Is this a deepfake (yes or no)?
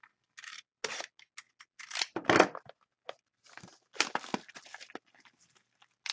no